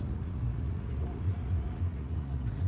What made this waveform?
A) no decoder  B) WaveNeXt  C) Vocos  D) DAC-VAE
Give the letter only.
C